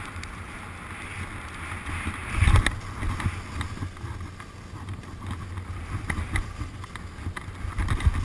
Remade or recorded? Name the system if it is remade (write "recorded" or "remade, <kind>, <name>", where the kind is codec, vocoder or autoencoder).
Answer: recorded